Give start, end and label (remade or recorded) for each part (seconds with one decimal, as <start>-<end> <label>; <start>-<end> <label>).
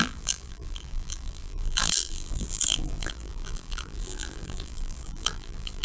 0.0-5.8 remade